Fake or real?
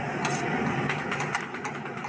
real